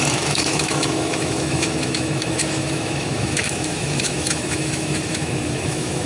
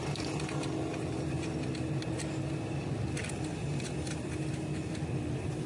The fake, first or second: first